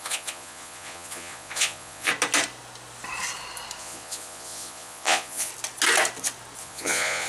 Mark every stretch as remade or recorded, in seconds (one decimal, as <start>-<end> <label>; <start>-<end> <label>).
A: 0.0-2.1 remade; 2.1-3.8 recorded; 3.8-5.5 remade; 5.5-6.6 recorded; 6.6-7.3 remade